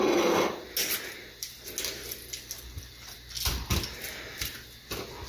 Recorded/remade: recorded